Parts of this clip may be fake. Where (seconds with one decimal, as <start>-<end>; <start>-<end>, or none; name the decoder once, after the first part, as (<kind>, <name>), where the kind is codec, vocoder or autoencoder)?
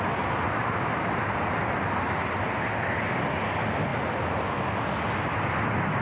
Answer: none